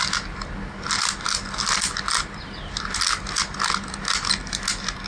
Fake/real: real